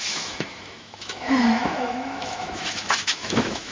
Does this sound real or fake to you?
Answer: fake